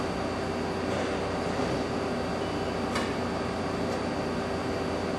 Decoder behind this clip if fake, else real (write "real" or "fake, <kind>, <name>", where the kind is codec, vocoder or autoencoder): real